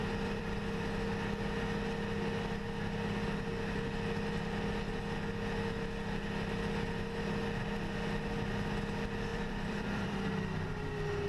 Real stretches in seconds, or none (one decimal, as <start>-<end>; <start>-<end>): 0.6-9.3; 10.1-11.3

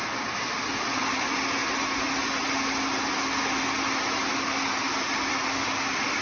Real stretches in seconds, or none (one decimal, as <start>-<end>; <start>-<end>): 0.7-6.2

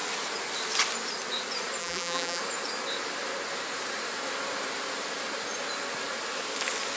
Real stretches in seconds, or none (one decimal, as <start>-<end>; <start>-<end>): 0.0-1.8; 2.4-7.0

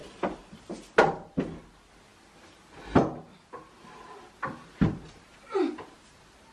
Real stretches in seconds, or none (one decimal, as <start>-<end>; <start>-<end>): 0.7-6.5

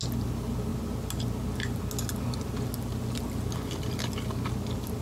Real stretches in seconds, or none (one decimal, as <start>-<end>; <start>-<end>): 0.0-5.0

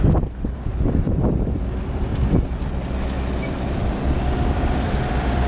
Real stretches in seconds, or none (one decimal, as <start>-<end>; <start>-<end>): 2.1-3.5

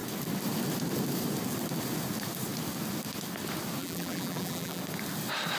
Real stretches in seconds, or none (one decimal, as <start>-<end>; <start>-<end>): 0.0-3.8; 4.8-5.6

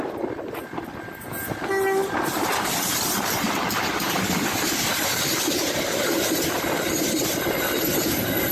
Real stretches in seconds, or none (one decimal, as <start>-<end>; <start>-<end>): 0.0-2.0; 7.1-8.5